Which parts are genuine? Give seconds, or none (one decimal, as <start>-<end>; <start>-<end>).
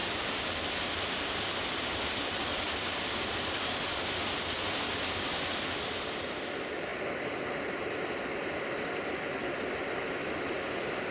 0.0-11.1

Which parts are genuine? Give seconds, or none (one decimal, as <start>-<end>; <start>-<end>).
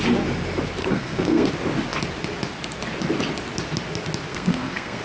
0.0-0.8; 1.5-4.3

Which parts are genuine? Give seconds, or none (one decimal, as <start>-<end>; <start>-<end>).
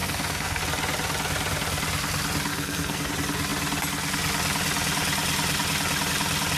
0.6-2.5; 3.1-6.6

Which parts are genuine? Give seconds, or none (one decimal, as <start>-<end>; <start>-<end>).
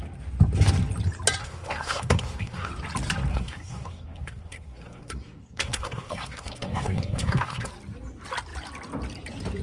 0.0-1.4; 2.7-3.3; 7.7-9.6